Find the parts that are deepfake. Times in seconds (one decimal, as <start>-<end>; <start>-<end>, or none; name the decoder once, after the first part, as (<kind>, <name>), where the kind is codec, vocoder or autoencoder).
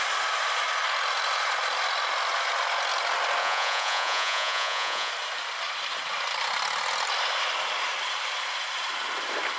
3.4-5.1 (vocoder, Vocos)